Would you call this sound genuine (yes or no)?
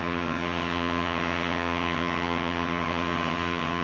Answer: no